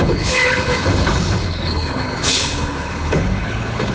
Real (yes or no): no